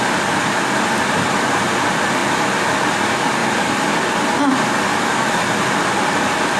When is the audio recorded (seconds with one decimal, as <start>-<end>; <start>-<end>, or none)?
none